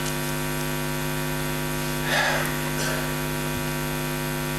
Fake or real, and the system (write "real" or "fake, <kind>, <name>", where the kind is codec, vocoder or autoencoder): real